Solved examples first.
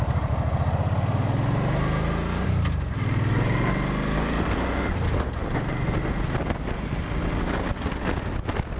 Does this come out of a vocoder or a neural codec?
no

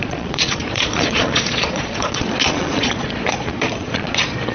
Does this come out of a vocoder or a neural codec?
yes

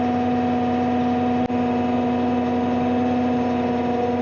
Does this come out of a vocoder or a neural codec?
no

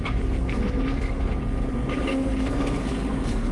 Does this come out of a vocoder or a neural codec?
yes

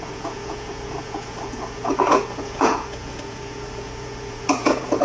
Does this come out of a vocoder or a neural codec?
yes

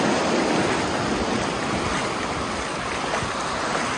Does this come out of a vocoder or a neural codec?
no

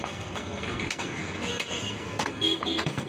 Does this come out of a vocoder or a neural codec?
yes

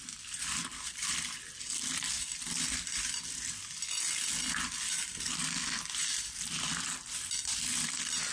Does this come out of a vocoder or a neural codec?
no